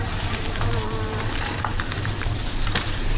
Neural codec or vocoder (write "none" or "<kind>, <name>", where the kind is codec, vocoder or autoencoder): vocoder, BigVGAN v2